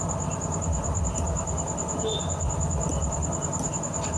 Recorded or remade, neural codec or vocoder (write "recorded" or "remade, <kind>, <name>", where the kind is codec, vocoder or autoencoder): recorded